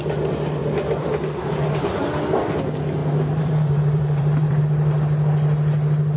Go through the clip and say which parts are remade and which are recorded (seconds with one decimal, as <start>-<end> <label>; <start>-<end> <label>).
0.0-3.0 recorded; 3.0-4.6 remade; 4.6-6.2 recorded